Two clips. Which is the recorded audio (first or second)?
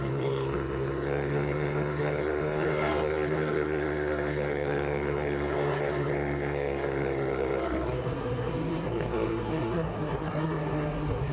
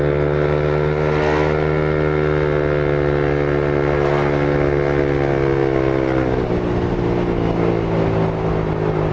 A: second